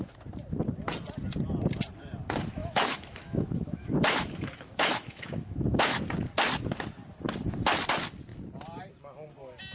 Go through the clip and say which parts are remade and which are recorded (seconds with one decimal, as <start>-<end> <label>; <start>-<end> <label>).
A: 0.0-2.6 recorded; 2.6-6.0 remade; 6.0-9.7 recorded